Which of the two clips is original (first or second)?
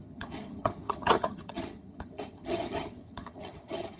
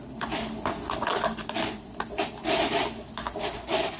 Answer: second